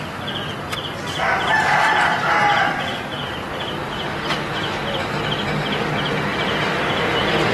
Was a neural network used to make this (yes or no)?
no